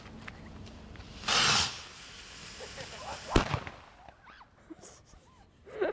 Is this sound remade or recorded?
recorded